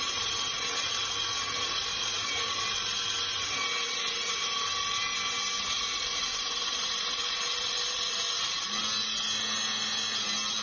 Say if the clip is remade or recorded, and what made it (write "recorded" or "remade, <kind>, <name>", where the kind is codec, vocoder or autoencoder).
recorded